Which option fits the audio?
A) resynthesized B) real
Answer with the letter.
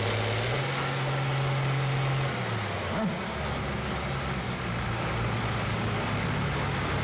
B